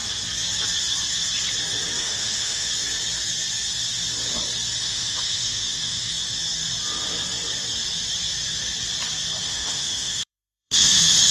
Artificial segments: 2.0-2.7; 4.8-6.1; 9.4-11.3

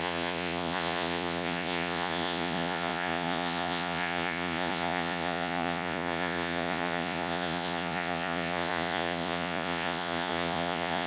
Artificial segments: 0.0-11.1

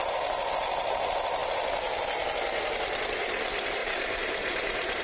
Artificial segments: 3.8-5.0

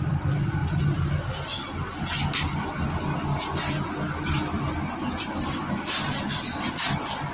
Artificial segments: none

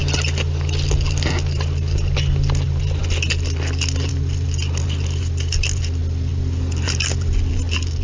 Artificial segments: none

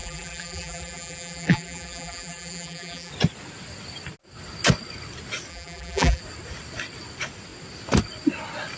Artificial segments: 0.0-3.1; 5.5-6.2

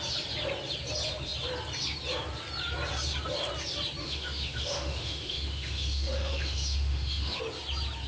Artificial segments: 4.0-7.4